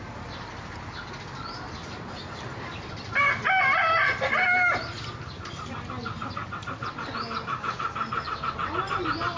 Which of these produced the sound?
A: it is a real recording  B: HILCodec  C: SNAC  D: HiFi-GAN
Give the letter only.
A